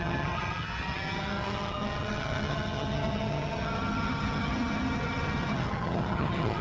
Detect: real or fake fake